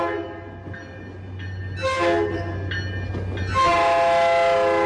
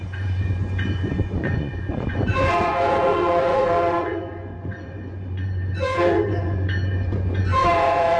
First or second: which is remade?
second